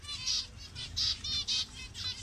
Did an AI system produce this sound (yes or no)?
no